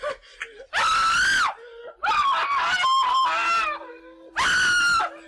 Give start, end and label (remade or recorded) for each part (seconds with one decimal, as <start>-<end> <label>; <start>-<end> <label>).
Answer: 0.0-5.3 recorded